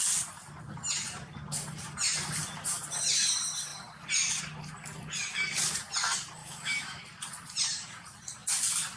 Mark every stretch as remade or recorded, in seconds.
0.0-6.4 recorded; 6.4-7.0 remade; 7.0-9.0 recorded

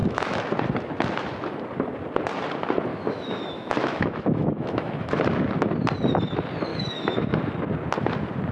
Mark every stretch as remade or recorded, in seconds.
0.0-0.5 remade; 0.5-2.9 recorded; 2.9-5.1 remade; 5.1-6.7 recorded; 6.7-7.4 remade; 7.4-8.5 recorded